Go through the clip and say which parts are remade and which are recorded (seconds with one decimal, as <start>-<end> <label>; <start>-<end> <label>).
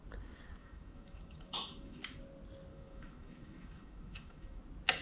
0.0-0.6 recorded; 0.6-2.0 remade; 2.0-2.7 recorded; 2.7-4.6 remade; 4.6-5.0 recorded